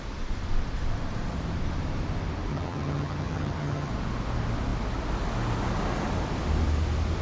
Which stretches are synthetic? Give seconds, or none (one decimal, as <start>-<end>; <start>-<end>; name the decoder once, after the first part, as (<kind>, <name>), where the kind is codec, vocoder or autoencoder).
2.5-3.9 (vocoder, HiFi-GAN)